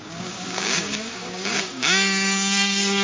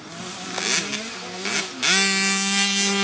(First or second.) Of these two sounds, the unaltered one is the second